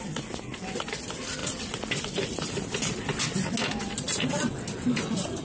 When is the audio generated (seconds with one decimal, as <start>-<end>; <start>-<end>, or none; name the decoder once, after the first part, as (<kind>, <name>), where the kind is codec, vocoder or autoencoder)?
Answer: none